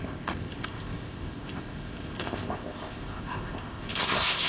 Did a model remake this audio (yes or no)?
yes